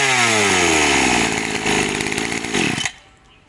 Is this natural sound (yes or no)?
yes